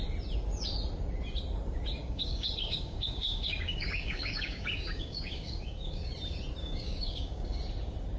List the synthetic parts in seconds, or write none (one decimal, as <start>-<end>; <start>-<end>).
2.0-6.1; 6.6-7.6